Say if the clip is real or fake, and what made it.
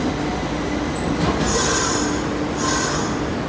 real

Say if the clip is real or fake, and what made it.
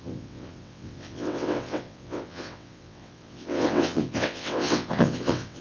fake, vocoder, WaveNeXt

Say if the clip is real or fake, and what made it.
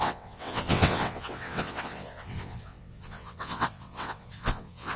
fake, vocoder, WaveNeXt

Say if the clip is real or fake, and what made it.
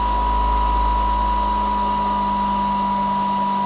real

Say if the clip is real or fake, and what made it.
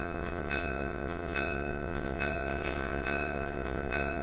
fake, vocoder, WaveNeXt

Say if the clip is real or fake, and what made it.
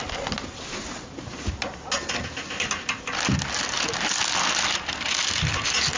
real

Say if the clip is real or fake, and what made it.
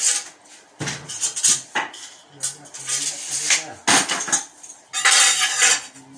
real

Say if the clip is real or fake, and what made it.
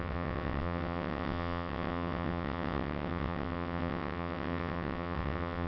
fake, vocoder, WaveNeXt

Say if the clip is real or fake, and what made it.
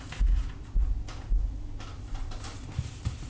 real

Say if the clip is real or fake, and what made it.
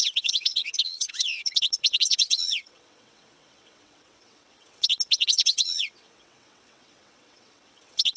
fake, vocoder, WaveNeXt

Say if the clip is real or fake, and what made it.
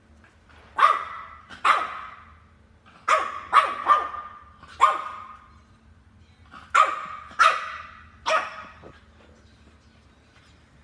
real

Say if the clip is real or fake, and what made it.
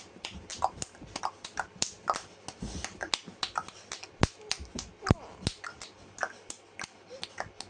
real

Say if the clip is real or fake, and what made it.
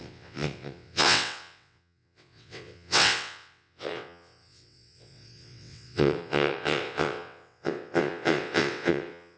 fake, vocoder, WaveNeXt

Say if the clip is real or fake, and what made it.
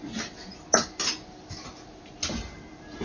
real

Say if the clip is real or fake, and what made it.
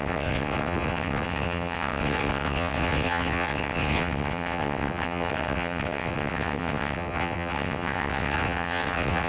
fake, vocoder, WaveNeXt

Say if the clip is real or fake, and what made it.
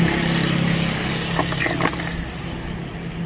real